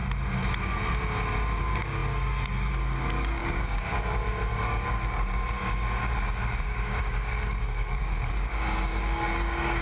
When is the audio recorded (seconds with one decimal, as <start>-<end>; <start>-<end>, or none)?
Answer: 0.0-1.6